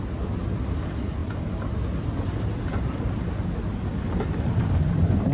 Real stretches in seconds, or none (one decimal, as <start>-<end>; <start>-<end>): 0.0-5.3